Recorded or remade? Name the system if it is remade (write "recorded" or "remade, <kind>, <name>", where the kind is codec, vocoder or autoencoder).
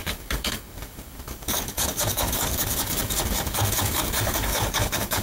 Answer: remade, codec, DAC